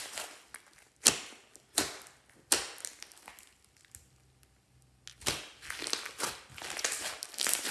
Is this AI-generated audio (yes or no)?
no